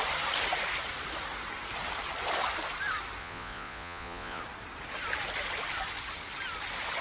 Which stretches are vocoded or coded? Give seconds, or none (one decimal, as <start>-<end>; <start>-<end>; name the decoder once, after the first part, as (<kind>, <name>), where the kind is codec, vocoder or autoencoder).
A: 3.2-4.4 (vocoder, Vocos)